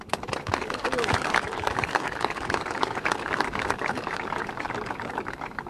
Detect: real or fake fake